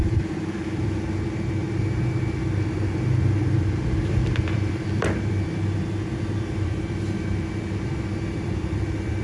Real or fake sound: fake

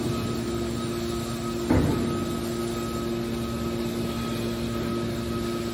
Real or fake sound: real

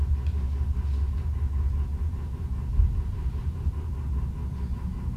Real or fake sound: real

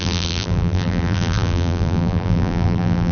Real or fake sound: fake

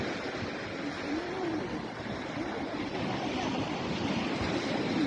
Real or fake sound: fake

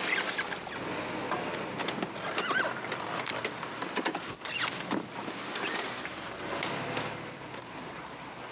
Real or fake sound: real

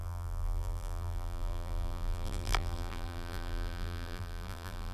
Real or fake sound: fake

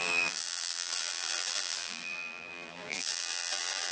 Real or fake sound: fake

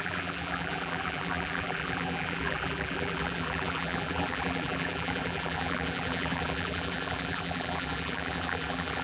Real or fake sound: fake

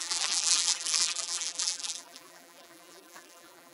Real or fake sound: fake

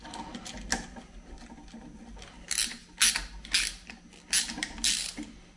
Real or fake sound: real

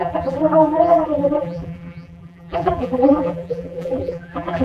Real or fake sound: fake